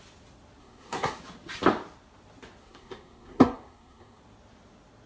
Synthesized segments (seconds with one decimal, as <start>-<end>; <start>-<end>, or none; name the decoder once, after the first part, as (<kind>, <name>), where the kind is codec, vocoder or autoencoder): 0.6-1.2 (codec, SNAC); 2.6-4.2